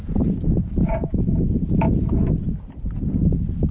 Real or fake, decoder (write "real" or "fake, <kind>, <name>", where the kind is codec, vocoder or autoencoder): real